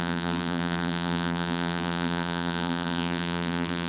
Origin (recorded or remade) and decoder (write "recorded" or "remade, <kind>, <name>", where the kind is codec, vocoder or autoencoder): remade, vocoder, BigVGAN v2